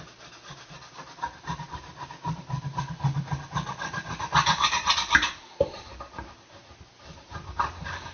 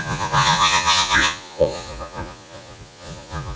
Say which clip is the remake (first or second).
second